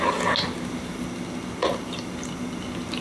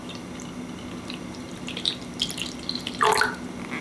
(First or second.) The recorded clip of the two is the first